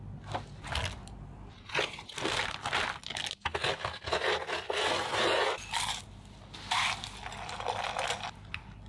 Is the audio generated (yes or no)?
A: no